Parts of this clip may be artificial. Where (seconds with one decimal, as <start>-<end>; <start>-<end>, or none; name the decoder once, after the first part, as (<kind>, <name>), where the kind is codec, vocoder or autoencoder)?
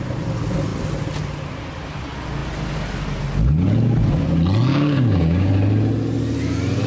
4.7-5.5 (codec, DAC)